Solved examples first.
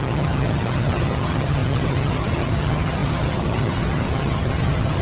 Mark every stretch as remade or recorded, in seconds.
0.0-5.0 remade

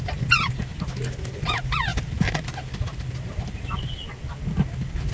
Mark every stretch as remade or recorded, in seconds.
0.0-5.1 recorded

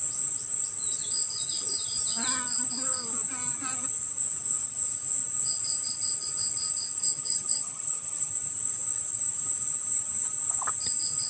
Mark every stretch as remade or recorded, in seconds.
0.0-7.0 recorded; 7.0-8.3 remade; 8.3-11.3 recorded

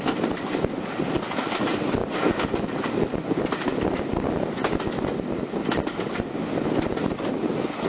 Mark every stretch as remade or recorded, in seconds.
0.0-7.9 recorded

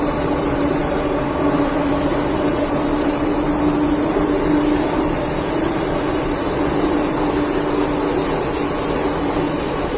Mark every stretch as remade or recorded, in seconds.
0.0-10.0 recorded